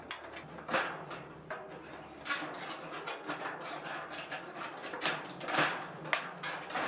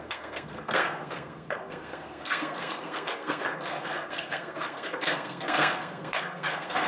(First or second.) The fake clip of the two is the second